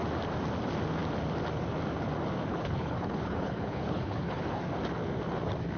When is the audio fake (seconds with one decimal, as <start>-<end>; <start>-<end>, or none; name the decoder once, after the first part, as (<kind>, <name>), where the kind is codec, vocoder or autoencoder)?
2.5-4.6 (codec, HILCodec)